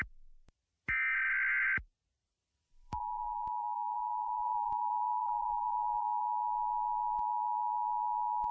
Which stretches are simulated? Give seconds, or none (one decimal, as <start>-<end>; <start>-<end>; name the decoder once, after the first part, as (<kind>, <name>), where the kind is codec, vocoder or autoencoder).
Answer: 2.2-6.2 (vocoder, BigVGAN v2)